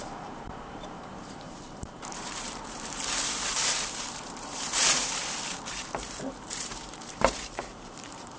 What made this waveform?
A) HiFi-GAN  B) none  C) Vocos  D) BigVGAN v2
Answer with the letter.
D